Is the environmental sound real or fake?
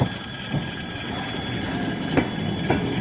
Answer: real